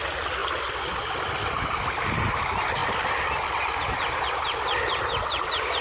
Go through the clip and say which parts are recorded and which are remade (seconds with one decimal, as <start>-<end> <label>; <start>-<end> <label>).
0.0-5.8 recorded